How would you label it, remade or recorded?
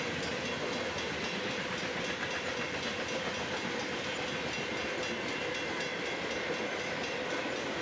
recorded